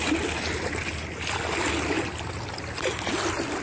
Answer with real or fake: real